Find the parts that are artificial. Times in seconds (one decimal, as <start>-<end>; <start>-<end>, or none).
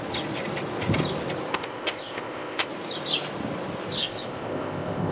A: 1.5-2.7; 4.0-5.1